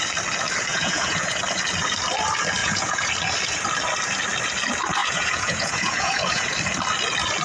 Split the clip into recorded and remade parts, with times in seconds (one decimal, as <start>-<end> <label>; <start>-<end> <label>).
0.0-0.7 recorded; 0.7-1.4 remade; 1.4-2.6 recorded; 2.6-3.1 remade; 3.1-5.0 recorded; 5.0-6.5 remade; 6.5-7.4 recorded